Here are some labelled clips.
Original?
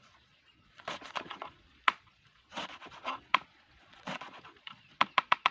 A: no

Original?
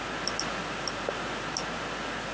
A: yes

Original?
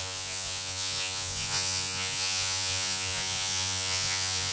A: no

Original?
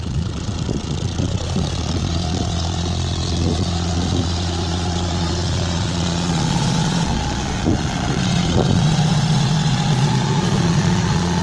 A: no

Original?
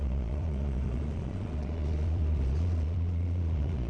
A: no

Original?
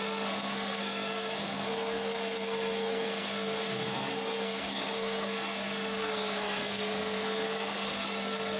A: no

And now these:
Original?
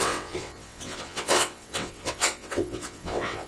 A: no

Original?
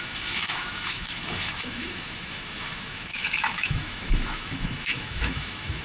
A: no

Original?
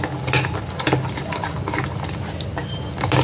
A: yes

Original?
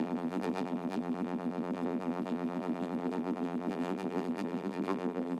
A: no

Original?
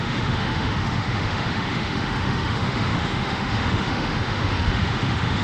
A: no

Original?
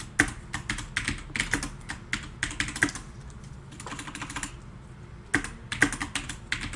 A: yes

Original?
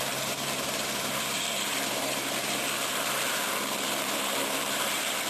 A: no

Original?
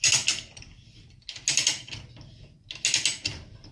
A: yes